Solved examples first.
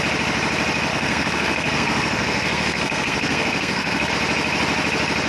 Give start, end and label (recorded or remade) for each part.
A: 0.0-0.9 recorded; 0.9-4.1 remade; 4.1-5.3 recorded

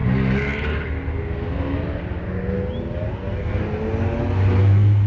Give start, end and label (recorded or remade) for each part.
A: 0.0-3.1 recorded; 3.1-3.6 remade; 3.6-4.6 recorded; 4.6-5.1 remade

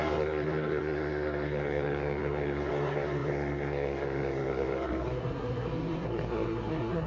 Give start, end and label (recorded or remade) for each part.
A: 0.0-7.1 remade

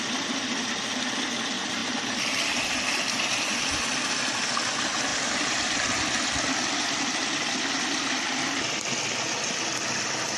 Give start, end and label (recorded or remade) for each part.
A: 0.0-10.4 recorded